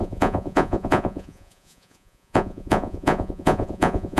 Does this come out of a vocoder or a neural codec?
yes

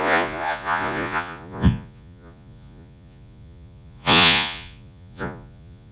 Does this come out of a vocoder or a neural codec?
yes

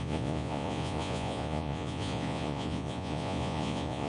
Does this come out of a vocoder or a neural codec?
yes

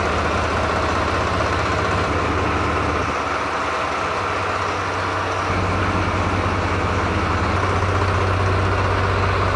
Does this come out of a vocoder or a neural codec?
no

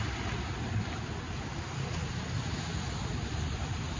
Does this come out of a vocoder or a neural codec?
no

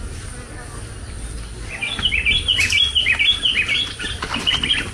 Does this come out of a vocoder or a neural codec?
no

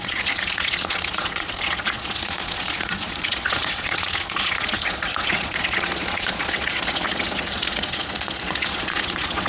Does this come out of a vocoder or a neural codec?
yes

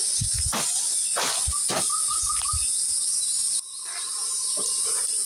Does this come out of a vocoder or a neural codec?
no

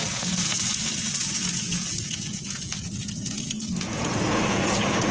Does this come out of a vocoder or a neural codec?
yes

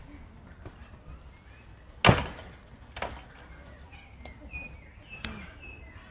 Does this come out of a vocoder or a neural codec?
no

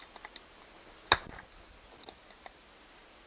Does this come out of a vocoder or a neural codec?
no